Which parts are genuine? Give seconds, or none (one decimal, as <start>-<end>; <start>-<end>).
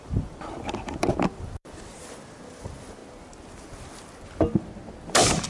3.0-5.0